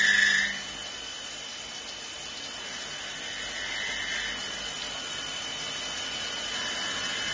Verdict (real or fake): real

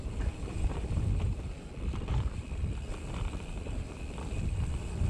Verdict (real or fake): fake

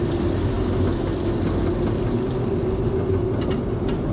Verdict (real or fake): real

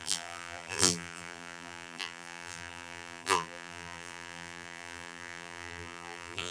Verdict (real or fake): fake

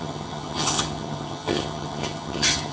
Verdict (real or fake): fake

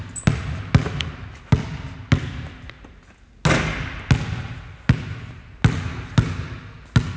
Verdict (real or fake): real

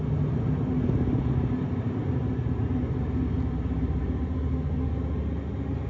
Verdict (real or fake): real